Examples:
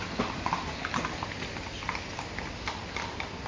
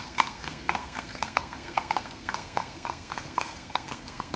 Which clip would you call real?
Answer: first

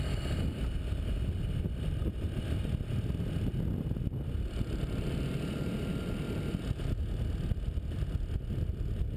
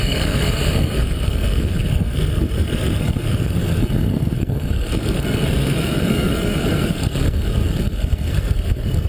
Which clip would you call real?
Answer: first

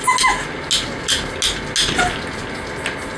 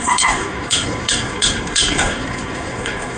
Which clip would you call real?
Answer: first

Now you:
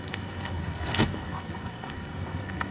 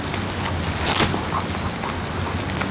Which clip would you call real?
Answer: second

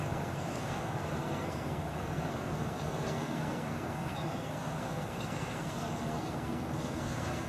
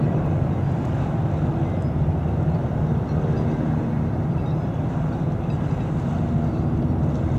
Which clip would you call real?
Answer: second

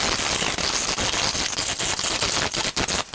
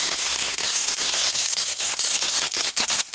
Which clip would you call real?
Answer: first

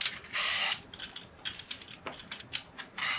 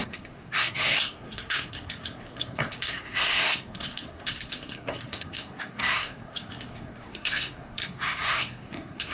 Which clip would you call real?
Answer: first